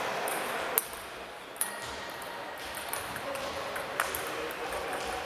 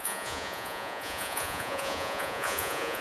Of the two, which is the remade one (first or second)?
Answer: second